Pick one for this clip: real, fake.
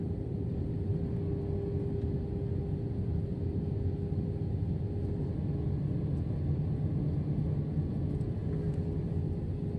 real